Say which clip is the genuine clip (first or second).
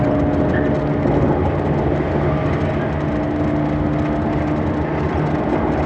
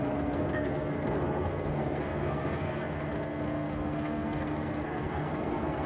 first